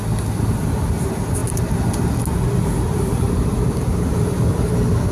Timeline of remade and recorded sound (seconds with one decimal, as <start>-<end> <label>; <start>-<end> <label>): 0.0-5.1 recorded